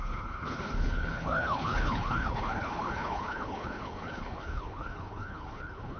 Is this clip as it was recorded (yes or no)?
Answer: no